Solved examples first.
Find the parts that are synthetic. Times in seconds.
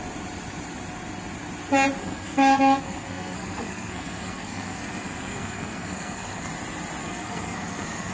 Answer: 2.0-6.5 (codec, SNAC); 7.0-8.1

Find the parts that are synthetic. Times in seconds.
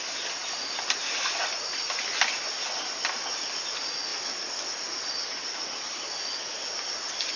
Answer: none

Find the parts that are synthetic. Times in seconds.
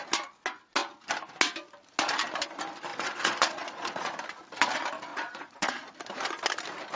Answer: 2.9-4.1 (vocoder, Vocos); 5.1-5.9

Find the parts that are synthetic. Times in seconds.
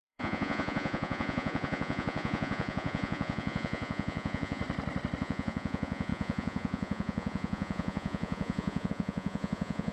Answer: 0.0-4.6 (vocoder, Vocos); 5.2-9.9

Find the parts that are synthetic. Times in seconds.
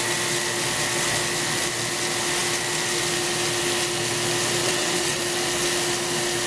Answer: 4.6-5.2 (vocoder, WaveNeXt)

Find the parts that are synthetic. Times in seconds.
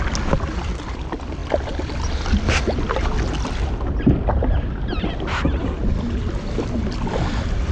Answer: none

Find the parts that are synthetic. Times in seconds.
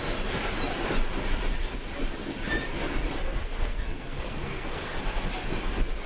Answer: 3.4-5.0 (codec, SNAC)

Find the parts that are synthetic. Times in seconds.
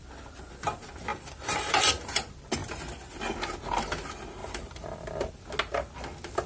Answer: 1.1-1.9 (vocoder, BigVGAN v2); 2.6-3.2; 4.4-5.3